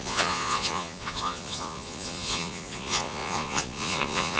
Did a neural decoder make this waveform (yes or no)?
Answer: yes